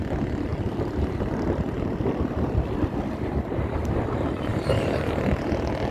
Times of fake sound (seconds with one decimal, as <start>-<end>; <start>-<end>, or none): 4.5-5.1

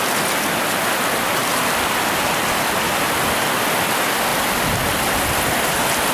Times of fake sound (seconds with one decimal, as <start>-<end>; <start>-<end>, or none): none

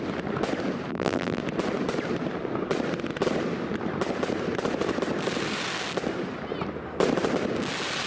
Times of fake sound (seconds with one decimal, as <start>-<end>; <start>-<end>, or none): 0.9-1.4

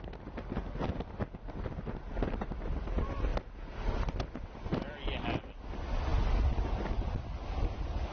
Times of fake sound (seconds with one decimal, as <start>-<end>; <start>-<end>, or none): none

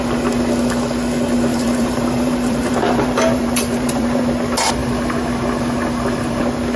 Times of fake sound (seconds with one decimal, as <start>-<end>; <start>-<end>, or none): 1.5-4.2